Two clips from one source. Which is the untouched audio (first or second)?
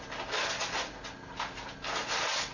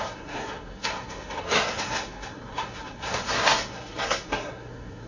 first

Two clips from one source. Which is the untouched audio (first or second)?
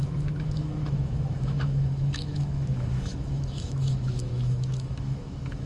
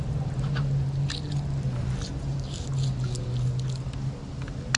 second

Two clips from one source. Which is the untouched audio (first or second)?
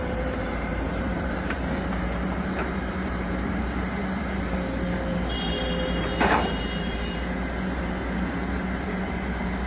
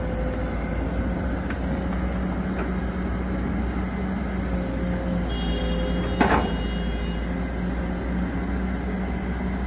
second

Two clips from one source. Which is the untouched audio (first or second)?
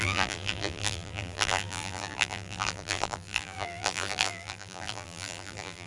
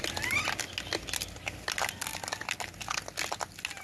second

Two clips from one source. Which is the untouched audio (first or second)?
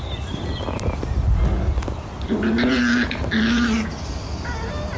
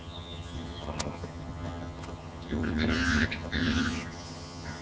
first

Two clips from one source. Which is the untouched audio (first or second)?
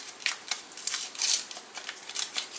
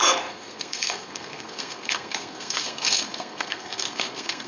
first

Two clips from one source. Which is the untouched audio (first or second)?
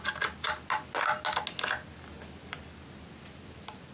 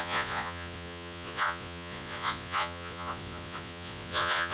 first